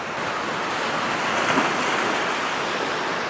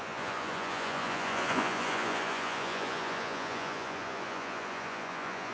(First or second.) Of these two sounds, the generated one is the second